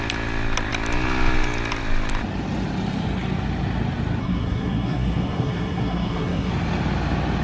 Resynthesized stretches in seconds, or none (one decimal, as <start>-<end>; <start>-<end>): 4.2-6.5

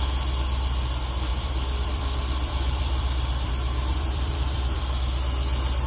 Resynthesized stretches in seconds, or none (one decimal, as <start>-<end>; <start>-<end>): 1.3-3.5; 3.9-4.8

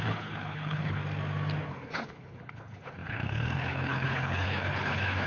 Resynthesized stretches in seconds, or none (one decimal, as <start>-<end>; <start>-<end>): 0.0-1.0; 1.7-5.3

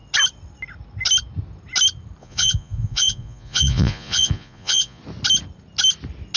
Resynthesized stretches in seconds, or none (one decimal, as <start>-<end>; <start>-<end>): 2.2-5.0

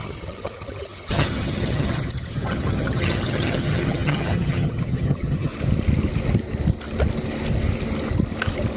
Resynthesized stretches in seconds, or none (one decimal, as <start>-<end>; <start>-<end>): 0.0-5.5

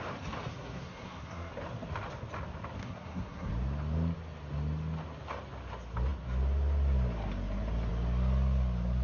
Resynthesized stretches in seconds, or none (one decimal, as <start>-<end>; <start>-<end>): 0.5-1.5; 2.8-3.5

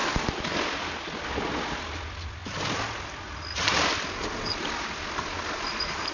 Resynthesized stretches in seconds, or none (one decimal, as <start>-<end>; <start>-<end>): none

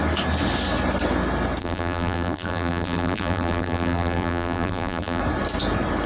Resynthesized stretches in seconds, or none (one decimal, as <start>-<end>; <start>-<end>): 1.6-5.2